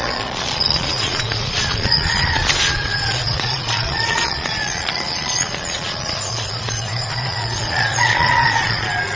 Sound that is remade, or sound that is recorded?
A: remade